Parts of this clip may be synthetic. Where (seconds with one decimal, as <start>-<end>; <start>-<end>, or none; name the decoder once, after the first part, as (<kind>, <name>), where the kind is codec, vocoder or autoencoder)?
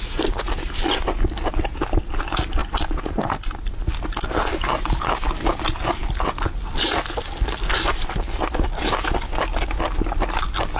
none